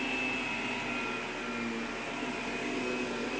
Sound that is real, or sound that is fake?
real